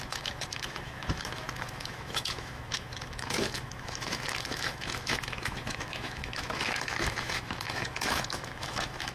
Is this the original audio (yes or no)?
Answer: no